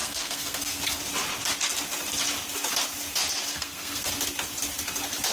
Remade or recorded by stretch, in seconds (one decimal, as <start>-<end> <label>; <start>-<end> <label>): 0.0-0.8 remade; 0.8-3.5 recorded; 3.5-4.1 remade; 4.1-5.3 recorded